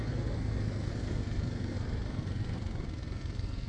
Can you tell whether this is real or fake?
fake